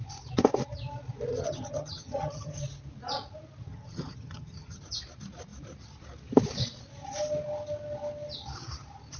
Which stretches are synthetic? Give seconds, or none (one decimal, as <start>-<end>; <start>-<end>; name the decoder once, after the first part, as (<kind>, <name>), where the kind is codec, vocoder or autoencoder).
1.3-2.6 (vocoder, HiFi-GAN); 3.7-4.8

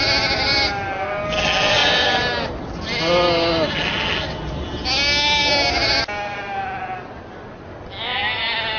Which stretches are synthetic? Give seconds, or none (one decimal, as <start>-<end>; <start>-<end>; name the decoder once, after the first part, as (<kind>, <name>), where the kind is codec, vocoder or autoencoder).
none

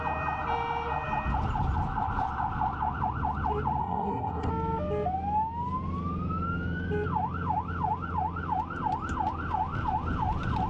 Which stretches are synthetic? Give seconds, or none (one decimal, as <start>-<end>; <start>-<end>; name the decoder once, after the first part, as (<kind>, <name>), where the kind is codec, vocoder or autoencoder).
3.8-4.5 (codec, SNAC)

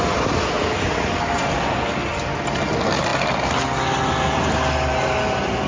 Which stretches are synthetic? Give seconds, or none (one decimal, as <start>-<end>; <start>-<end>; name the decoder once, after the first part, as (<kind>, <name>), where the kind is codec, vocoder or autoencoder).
none

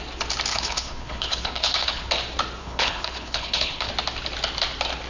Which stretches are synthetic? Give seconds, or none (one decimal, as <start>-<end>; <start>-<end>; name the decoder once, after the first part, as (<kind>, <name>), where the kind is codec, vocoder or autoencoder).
0.5-2.1 (codec, HILCodec); 2.6-3.9

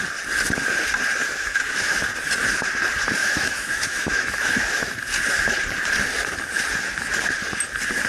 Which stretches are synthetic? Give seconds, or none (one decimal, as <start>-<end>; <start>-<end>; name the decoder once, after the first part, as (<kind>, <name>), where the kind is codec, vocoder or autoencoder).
1.2-2.0 (autoencoder, DAC-VAE); 3.2-4.9

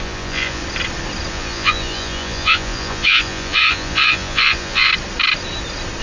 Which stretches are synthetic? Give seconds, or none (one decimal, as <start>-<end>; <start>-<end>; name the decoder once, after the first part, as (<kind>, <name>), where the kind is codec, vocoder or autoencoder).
0.0-0.6 (vocoder, Vocos); 1.3-4.9